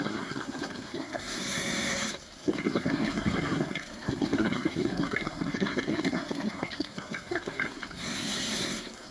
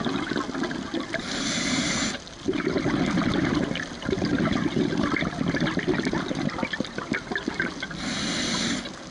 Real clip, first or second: second